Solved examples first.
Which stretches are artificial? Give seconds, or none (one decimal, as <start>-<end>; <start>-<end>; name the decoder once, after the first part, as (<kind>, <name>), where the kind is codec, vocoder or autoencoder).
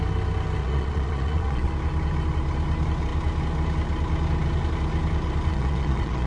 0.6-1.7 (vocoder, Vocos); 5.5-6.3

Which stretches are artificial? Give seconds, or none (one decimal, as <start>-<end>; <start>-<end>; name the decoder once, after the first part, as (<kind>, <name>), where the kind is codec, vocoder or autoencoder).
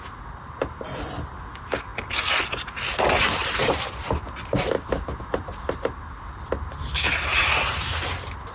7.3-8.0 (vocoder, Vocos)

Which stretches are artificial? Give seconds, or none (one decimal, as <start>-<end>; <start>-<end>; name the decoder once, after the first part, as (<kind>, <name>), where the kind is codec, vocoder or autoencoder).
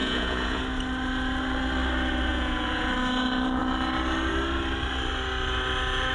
0.0-0.6 (vocoder, Vocos); 2.3-2.9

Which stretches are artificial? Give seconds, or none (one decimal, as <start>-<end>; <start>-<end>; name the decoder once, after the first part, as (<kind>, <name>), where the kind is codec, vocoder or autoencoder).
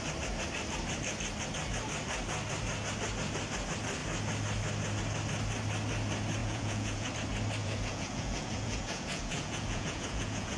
6.4-7.1 (vocoder, Vocos); 7.6-10.6